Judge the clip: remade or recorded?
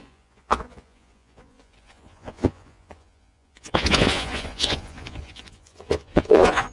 remade